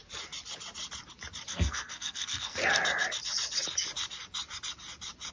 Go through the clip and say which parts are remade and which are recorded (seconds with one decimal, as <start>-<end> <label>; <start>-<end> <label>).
0.0-1.5 recorded; 1.5-2.6 remade; 2.6-5.3 recorded